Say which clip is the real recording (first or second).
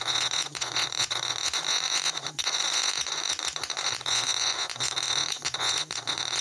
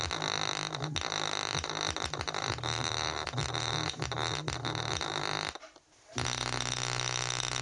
second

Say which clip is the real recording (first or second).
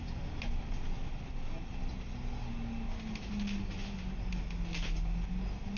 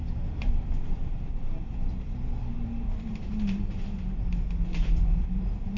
first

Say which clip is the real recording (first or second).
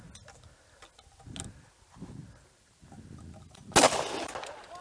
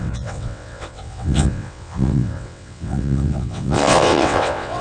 first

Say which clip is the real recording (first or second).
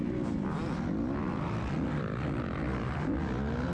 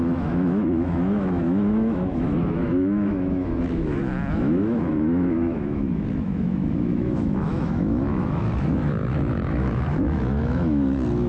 first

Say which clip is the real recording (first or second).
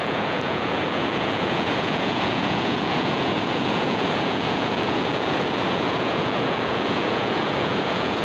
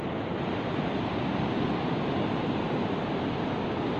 second